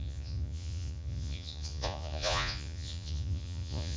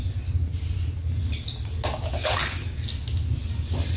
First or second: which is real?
second